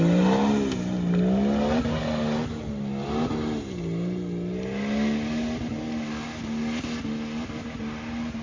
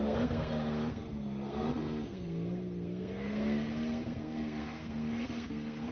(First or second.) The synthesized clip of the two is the second